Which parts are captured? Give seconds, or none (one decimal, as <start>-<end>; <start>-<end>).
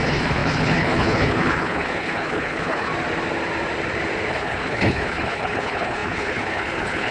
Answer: 2.9-4.3